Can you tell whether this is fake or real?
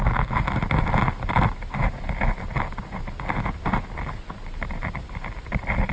real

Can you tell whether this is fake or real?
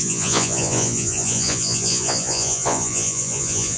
fake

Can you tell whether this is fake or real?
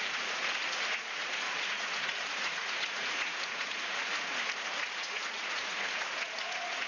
fake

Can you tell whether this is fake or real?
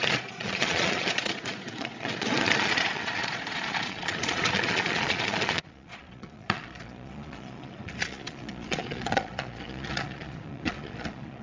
fake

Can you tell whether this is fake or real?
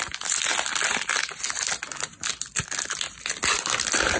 real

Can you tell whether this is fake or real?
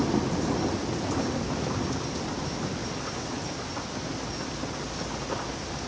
real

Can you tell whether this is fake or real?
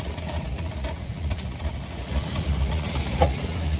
fake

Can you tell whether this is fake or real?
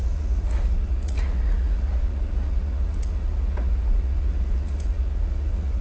fake